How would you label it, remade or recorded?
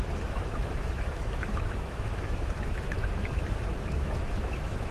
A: remade